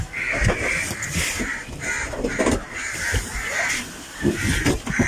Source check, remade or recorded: recorded